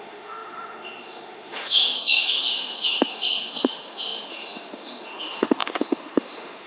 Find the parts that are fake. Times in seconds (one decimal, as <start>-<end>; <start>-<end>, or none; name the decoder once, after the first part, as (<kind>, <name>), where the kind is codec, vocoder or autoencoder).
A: 0.0-6.7 (autoencoder, DAC-VAE)